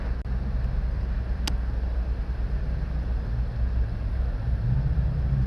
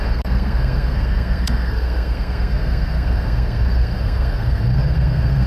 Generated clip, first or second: second